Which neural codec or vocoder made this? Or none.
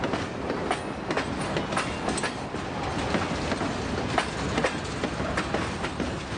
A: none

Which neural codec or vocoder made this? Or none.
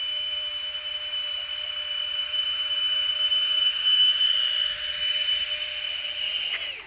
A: none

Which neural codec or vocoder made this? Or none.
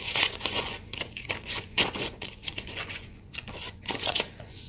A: vocoder, Vocos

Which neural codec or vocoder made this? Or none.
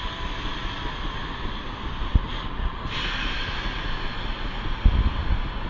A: none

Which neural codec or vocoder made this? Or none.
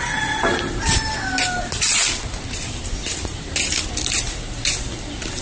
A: none